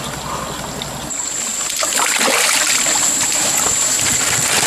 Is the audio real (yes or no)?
yes